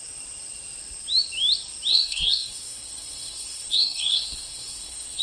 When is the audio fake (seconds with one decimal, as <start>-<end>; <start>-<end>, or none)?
1.9-5.2